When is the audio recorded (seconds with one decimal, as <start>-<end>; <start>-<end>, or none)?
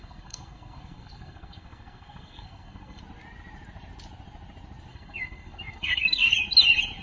3.0-4.9; 6.3-7.0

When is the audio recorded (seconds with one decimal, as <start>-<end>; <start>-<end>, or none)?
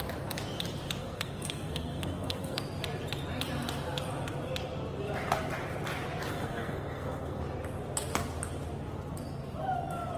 0.0-1.0; 2.6-6.3; 7.4-10.2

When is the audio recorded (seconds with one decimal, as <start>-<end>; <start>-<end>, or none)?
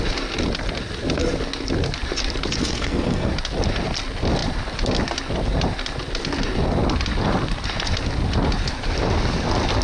0.0-2.6; 3.3-9.8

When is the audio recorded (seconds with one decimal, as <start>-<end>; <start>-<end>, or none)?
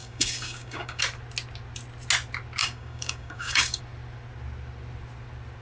1.0-2.6; 3.8-5.6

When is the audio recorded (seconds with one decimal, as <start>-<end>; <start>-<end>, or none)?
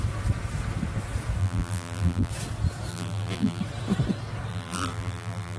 0.0-1.4; 2.3-2.9; 3.6-4.5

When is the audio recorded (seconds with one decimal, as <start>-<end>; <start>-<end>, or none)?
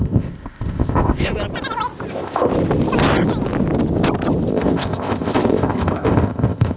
1.3-2.1; 2.5-4.5